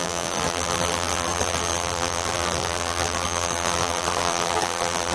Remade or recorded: remade